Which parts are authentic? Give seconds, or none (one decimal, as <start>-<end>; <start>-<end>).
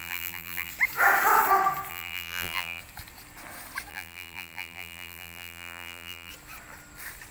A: 0.7-1.9; 2.8-3.9; 6.3-7.3